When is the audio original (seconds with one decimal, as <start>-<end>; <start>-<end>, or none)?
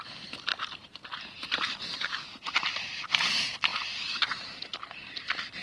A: 0.0-0.5; 3.3-5.6